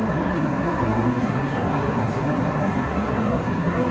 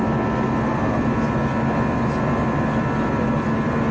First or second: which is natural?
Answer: second